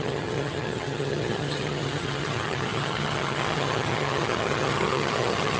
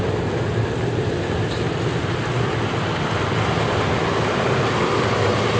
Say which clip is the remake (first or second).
first